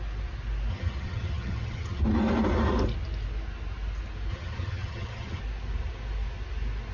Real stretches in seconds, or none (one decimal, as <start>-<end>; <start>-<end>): 0.0-0.7; 2.0-4.3; 5.4-6.9